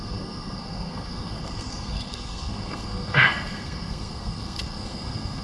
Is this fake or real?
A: fake